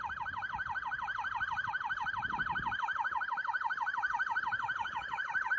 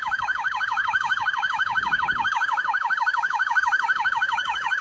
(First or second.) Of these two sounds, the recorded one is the first